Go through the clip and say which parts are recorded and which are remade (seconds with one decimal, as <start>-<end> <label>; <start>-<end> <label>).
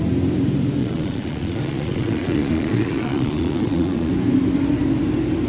0.0-0.8 recorded; 0.8-4.1 remade; 4.1-5.5 recorded